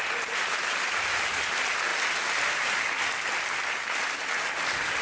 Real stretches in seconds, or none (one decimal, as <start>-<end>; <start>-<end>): 0.0-5.0